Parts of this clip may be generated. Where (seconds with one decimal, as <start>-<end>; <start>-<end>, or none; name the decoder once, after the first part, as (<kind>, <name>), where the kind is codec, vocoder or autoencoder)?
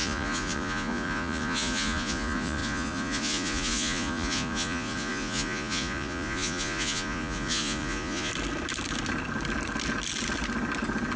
0.0-8.3 (vocoder, Vocos)